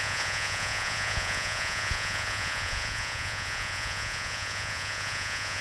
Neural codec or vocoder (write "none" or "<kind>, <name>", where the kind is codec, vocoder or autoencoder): vocoder, Vocos